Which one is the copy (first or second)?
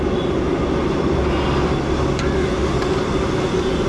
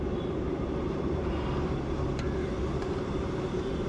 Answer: second